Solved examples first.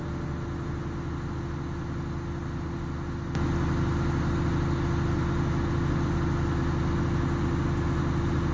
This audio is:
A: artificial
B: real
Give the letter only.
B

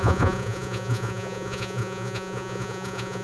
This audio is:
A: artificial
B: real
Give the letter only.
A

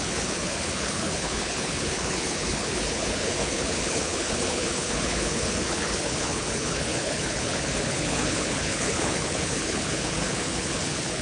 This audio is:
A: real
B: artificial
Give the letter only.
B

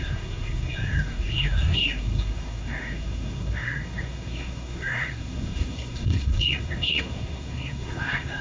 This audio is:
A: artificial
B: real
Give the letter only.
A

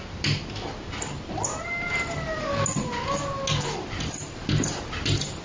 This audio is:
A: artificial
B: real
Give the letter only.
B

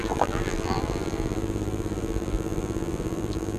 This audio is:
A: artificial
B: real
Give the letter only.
A